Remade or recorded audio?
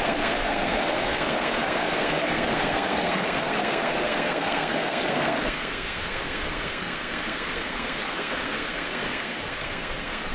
remade